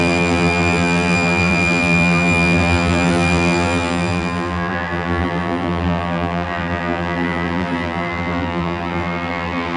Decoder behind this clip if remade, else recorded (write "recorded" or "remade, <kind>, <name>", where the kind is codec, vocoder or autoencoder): remade, vocoder, BigVGAN v2